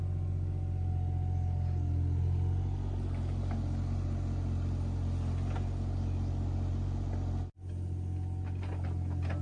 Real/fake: real